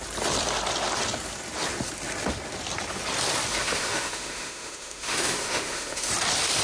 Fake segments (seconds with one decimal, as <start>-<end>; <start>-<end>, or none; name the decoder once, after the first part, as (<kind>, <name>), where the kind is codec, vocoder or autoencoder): 3.5-6.1 (autoencoder, DAC-VAE)